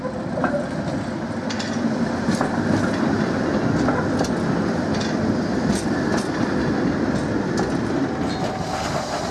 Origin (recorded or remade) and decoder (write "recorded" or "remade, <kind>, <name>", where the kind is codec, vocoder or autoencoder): recorded